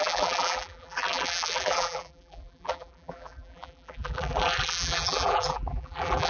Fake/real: fake